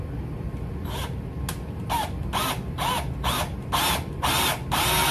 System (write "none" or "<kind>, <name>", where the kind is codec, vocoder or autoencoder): none